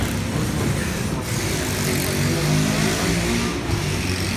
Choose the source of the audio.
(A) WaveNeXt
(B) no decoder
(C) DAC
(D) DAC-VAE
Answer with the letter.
B